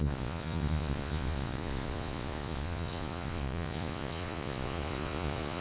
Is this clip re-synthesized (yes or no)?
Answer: yes